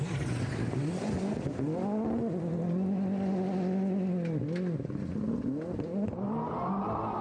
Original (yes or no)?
yes